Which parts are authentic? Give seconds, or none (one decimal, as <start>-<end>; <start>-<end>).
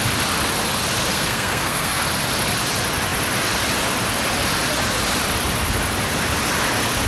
0.0-1.1; 2.0-7.1